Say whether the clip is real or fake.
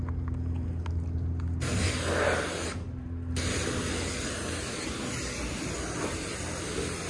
real